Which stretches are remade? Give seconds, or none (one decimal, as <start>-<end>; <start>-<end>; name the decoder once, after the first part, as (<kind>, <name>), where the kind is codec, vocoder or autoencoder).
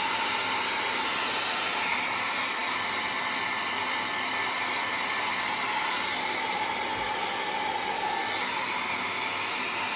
none